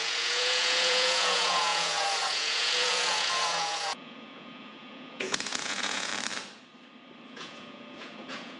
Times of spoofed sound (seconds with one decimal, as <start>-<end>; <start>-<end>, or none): 0.0-6.1; 7.3-8.6